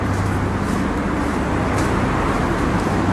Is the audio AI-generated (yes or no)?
no